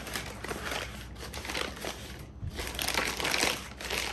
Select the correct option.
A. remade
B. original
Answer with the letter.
B